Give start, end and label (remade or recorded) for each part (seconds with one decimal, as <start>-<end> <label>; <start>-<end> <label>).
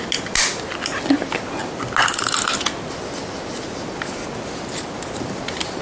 0.0-5.8 recorded